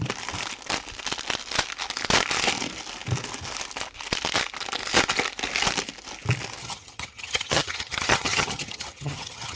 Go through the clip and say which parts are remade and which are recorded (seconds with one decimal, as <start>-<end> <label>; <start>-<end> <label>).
0.0-6.6 recorded; 6.6-9.6 remade